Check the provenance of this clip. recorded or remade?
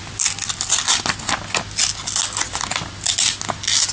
recorded